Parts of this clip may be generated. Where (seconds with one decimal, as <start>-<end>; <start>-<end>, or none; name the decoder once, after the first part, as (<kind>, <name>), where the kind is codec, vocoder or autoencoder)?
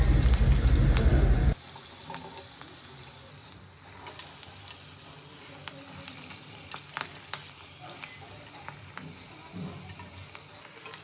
none